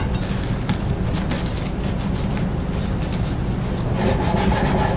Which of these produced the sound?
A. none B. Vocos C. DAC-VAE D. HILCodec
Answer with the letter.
A